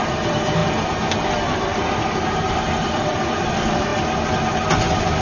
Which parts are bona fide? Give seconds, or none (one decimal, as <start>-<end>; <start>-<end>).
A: 0.6-2.5; 3.9-5.2